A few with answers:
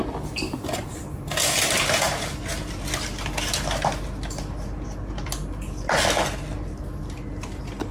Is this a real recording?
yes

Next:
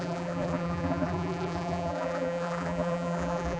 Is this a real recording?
no